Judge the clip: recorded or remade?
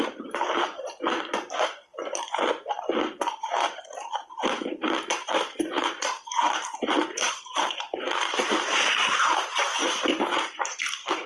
remade